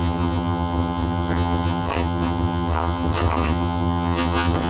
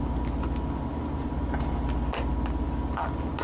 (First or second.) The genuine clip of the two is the second